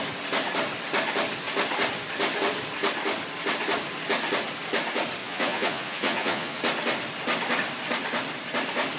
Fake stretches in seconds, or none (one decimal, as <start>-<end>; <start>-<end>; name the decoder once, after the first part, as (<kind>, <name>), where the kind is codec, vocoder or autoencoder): 5.2-6.6 (vocoder, Vocos)